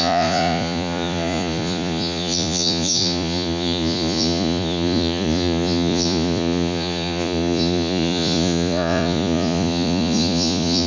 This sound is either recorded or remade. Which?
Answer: remade